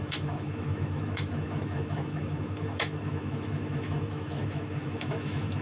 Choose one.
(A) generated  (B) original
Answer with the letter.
A